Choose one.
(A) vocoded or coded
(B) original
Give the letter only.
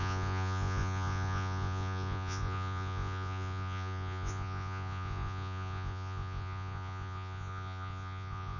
A